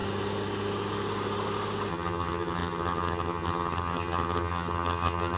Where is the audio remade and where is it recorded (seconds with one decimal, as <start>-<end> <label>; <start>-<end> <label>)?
0.0-1.9 recorded; 1.9-5.4 remade

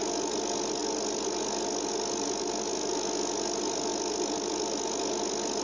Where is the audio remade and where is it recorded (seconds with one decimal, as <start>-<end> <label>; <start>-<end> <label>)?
0.0-5.6 recorded

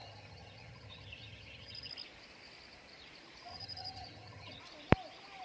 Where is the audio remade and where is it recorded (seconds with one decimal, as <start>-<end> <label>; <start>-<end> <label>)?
0.0-1.9 remade; 1.9-3.5 recorded; 3.5-4.6 remade; 4.6-5.4 recorded

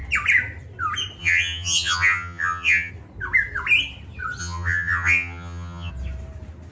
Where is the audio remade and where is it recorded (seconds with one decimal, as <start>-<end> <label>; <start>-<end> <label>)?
0.0-1.2 recorded; 1.2-2.9 remade; 2.9-4.4 recorded; 4.4-5.9 remade; 5.9-6.7 recorded

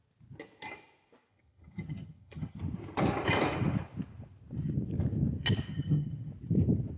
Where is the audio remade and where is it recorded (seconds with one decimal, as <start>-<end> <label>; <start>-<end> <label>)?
0.0-1.3 recorded; 1.3-2.6 remade; 2.6-5.7 recorded; 5.7-6.3 remade; 6.3-7.0 recorded

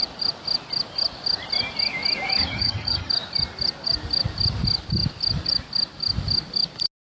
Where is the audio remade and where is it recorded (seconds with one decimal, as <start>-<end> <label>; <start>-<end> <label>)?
0.0-2.4 recorded; 2.4-3.1 remade; 3.1-7.0 recorded

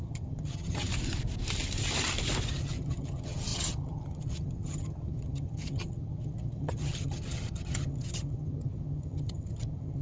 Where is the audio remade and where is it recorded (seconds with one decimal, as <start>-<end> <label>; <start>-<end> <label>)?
0.0-0.9 remade; 0.9-2.5 recorded; 2.5-10.0 remade

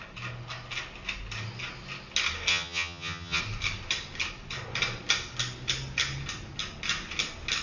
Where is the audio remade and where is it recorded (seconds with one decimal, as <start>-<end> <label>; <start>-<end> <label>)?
0.0-2.5 recorded; 2.5-3.4 remade; 3.4-7.6 recorded